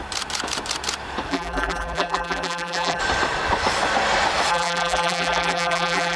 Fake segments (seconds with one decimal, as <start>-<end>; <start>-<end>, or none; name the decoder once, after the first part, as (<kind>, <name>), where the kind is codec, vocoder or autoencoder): 1.3-3.0 (vocoder, BigVGAN v2); 4.5-6.2